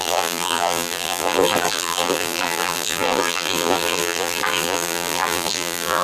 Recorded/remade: remade